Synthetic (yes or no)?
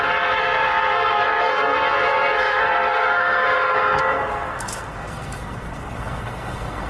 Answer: yes